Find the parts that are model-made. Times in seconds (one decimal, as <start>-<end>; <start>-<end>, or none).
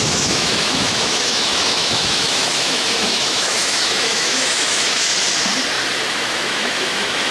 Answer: 0.0-5.1; 6.1-7.3